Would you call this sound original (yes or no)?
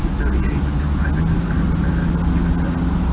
yes